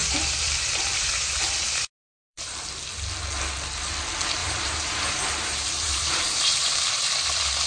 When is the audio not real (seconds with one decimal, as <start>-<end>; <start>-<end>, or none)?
0.0-1.4; 2.1-2.7; 4.4-7.0